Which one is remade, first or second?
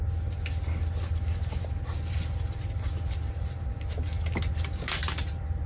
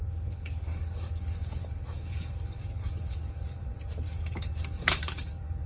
second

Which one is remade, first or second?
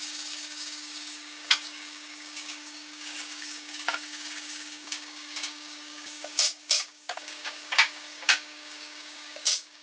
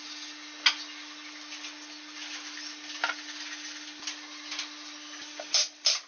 first